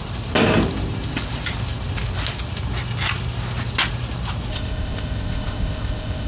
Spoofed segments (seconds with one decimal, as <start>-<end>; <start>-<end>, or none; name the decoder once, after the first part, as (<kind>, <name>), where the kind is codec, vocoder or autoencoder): 4.5-6.3 (codec, ZipCodec)